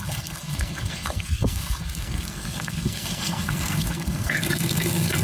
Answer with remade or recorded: remade